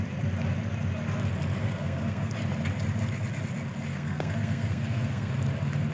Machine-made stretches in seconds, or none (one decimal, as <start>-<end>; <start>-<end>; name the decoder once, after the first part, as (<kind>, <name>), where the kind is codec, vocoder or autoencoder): 1.6-2.3 (codec, SNAC); 3.9-5.3